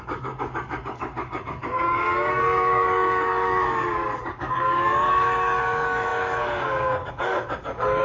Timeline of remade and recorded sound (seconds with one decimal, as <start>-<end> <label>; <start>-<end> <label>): 0.0-8.0 remade